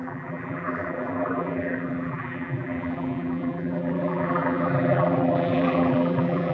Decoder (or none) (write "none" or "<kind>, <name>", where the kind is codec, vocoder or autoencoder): vocoder, BigVGAN v2